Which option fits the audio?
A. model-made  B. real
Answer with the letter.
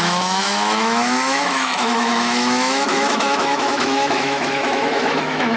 A